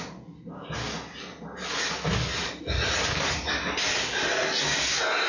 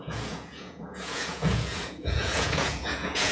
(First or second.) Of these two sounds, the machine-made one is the second